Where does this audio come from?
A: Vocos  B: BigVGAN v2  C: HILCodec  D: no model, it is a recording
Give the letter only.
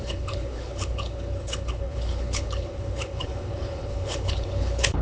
C